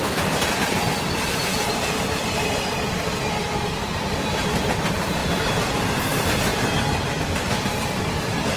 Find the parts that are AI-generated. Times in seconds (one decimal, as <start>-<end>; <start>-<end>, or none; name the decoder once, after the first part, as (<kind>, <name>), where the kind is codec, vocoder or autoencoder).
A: none